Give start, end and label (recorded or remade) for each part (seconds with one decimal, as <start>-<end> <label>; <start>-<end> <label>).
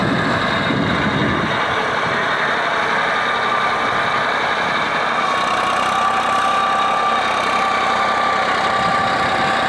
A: 0.0-9.7 recorded